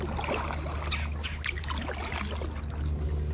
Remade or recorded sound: recorded